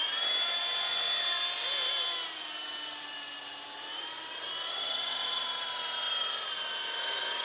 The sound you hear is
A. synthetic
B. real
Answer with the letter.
B